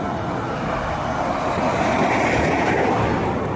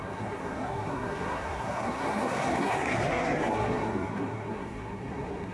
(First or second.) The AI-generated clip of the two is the second